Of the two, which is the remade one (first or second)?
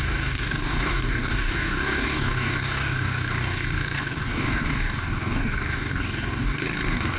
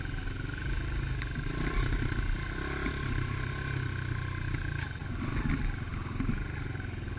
first